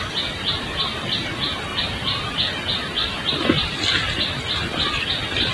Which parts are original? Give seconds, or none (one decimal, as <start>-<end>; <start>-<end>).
0.0-5.5